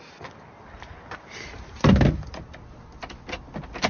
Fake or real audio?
real